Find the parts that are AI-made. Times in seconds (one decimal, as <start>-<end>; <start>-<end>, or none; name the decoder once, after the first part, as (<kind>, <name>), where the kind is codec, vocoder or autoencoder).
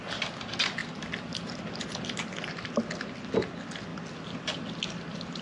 0.8-2.8 (vocoder, BigVGAN v2)